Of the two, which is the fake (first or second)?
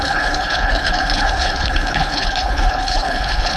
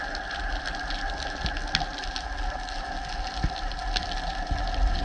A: first